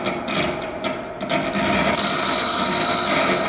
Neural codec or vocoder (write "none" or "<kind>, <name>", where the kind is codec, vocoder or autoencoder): none